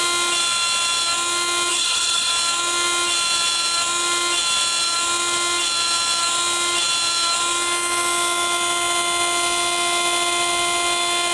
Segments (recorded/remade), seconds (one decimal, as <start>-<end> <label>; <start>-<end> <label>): 0.0-1.7 recorded; 1.7-2.3 remade; 2.3-11.3 recorded